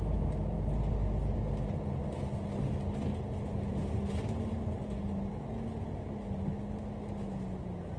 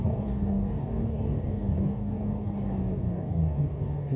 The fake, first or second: second